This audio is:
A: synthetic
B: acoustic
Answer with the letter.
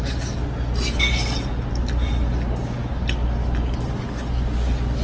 B